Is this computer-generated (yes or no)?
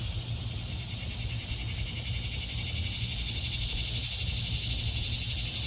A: no